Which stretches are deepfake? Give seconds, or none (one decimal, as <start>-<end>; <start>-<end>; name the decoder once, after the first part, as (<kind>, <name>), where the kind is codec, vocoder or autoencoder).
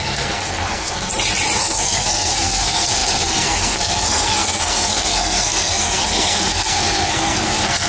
0.0-1.1 (codec, SNAC); 1.6-7.9